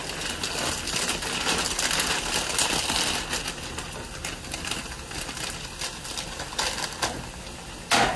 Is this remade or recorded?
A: recorded